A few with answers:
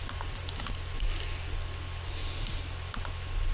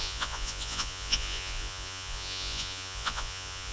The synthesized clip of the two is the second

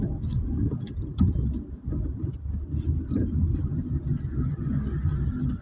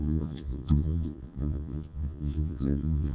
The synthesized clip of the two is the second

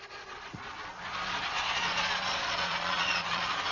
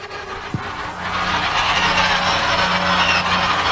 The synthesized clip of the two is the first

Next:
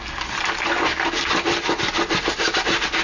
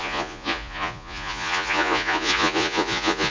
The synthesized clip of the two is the second